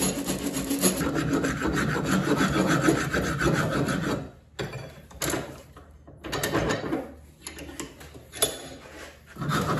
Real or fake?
real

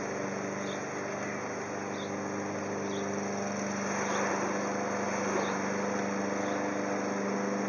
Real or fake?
real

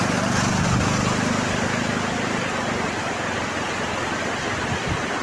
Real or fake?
real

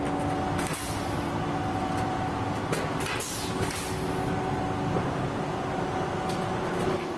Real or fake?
real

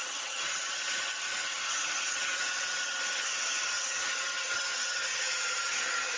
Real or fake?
fake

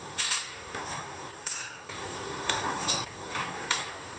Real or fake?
fake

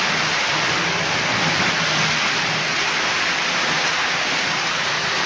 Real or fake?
real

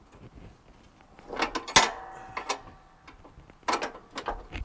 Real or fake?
real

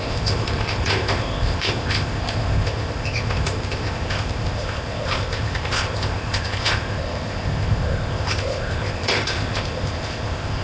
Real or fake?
fake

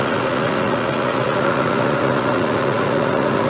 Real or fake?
fake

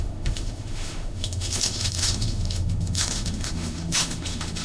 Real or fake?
fake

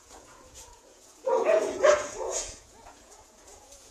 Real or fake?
fake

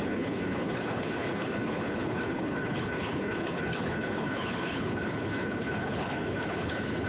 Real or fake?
fake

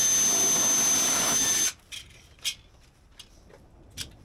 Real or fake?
real